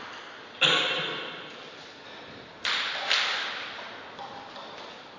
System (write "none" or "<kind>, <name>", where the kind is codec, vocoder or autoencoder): none